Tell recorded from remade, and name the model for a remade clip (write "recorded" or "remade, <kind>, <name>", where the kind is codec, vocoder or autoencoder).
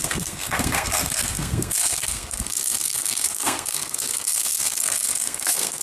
remade, codec, SNAC